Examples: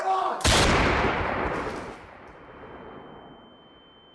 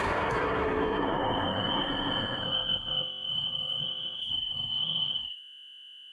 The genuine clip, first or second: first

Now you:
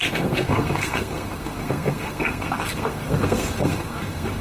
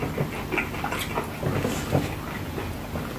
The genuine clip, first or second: second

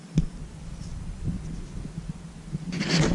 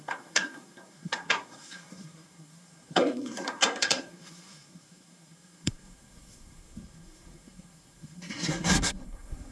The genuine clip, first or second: first